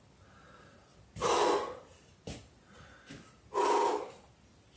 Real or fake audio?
real